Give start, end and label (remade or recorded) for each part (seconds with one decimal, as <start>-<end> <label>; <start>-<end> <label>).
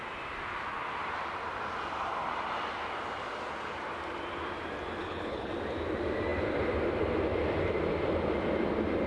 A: 0.0-5.0 recorded; 5.0-5.5 remade; 5.5-9.1 recorded